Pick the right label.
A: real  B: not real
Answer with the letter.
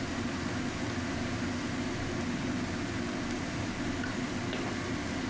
A